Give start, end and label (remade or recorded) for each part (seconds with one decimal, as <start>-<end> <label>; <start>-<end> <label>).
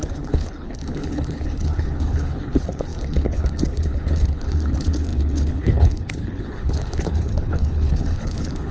0.0-8.7 remade